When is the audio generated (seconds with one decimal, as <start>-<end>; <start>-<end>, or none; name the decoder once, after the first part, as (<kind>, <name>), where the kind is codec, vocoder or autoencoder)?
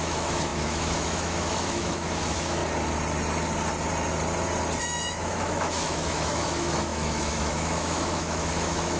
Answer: 0.0-2.6 (autoencoder, DAC-VAE); 4.8-9.0